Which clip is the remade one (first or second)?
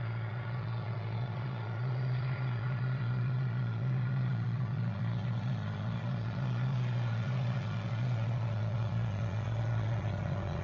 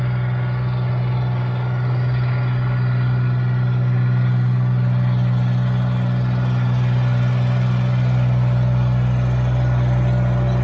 first